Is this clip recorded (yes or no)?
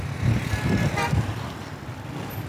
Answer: yes